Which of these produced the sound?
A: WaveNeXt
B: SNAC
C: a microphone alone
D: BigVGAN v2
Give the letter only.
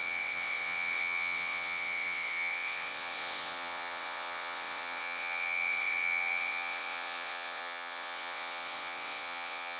A